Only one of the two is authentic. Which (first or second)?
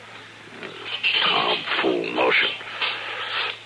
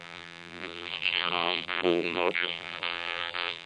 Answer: first